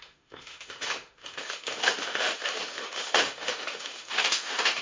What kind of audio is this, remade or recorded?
remade